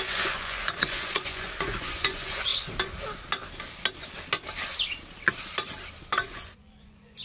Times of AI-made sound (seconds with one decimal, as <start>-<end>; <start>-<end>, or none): 0.0-2.5; 6.0-7.2